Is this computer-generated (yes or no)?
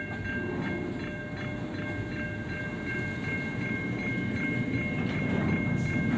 no